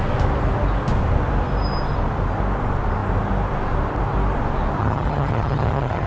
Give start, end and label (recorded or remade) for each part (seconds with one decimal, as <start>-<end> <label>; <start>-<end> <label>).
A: 0.0-4.8 recorded; 4.8-6.1 remade